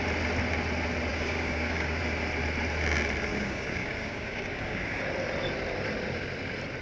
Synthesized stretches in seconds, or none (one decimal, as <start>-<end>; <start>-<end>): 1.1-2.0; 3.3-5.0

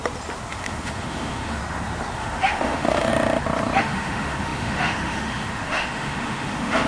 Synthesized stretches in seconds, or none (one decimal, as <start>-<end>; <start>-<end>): 0.5-1.6; 2.2-3.1; 3.8-6.9

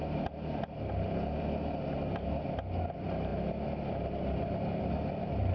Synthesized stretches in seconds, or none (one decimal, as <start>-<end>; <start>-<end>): none

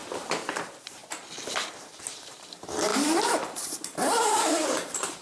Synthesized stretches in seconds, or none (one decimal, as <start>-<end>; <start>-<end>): 0.0-1.0; 1.8-5.2

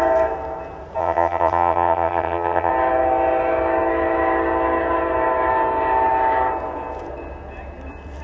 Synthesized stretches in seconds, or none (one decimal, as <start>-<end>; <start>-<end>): 1.0-2.7

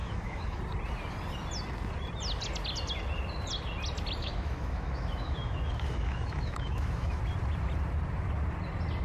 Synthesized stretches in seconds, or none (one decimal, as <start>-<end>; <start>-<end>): 0.0-0.6; 4.2-7.2